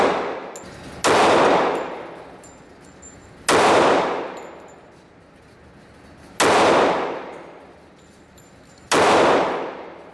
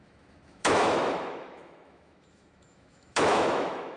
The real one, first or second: first